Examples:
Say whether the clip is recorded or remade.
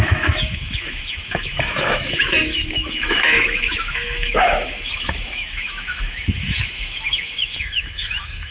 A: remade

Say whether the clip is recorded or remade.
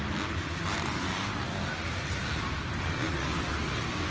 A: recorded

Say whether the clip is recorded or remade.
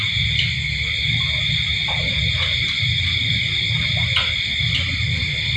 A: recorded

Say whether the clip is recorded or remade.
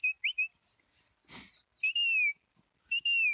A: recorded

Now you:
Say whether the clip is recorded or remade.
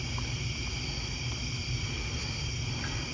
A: recorded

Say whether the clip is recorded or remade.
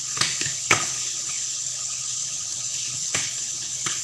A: remade